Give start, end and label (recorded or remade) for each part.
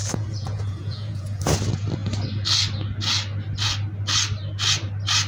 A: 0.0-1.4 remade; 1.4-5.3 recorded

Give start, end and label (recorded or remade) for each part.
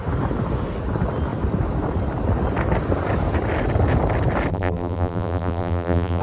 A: 0.0-4.5 recorded; 4.5-6.2 remade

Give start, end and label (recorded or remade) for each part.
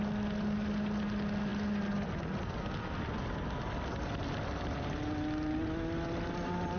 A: 0.0-6.8 recorded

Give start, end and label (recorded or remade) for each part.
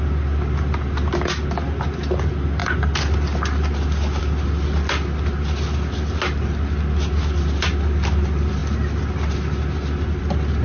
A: 0.0-10.6 recorded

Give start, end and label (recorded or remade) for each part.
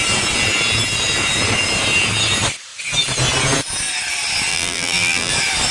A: 0.0-4.5 recorded; 4.5-5.3 remade; 5.3-5.7 recorded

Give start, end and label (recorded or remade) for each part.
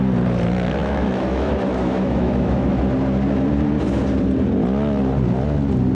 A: 0.0-0.8 recorded; 0.8-2.8 remade; 2.8-5.9 recorded